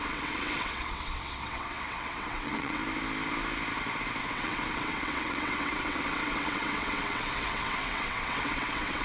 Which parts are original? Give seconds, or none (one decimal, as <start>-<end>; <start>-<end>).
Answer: 2.8-4.2